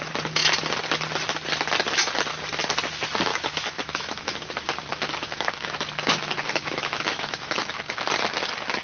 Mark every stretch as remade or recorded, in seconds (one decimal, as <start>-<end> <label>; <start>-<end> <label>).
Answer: 0.0-3.3 recorded; 3.3-4.4 remade; 4.4-4.9 recorded; 4.9-7.8 remade; 7.8-8.8 recorded